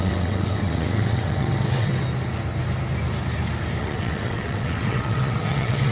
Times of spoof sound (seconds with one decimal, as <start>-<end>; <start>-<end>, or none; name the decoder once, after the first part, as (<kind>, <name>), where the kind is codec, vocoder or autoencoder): 0.0-1.9 (vocoder, WaveNeXt); 3.8-5.9